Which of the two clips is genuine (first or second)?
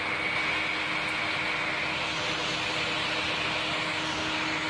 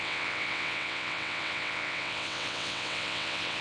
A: first